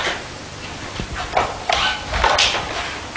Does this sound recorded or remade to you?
recorded